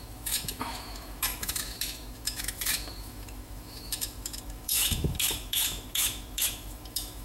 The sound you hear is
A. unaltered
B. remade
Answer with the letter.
B